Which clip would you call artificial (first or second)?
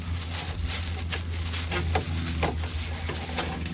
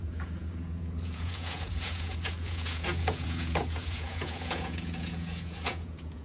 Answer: second